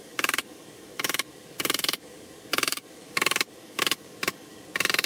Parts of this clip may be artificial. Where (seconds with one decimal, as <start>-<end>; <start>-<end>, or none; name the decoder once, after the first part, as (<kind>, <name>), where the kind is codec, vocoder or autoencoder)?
0.0-5.1 (codec, DAC)